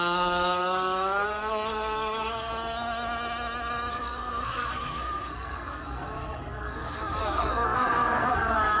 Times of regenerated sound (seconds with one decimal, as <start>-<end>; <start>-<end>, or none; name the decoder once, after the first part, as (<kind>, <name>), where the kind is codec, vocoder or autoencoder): 0.0-2.5 (codec, SNAC); 3.9-8.8